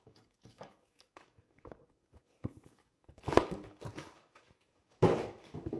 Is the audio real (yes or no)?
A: no